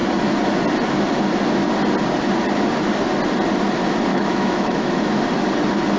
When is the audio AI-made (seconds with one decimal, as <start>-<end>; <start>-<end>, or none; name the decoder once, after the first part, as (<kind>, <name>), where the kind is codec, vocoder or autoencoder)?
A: 4.1-5.2 (autoencoder, DAC-VAE)